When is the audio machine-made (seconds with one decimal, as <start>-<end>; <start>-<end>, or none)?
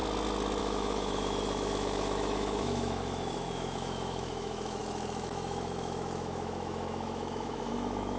0.6-8.2